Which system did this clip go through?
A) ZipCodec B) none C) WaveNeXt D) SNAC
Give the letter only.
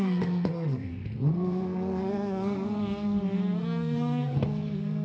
D